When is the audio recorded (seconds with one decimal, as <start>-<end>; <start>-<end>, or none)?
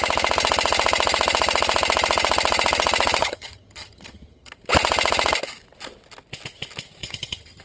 0.0-3.2; 4.5-7.0